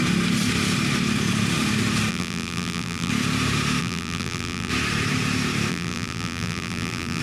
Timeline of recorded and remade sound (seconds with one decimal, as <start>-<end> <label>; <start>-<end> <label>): 0.0-2.1 recorded; 2.1-3.1 remade; 3.1-3.8 recorded; 3.8-4.7 remade; 4.7-5.7 recorded; 5.7-7.2 remade